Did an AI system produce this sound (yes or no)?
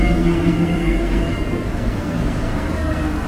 yes